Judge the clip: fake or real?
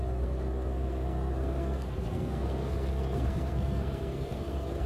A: fake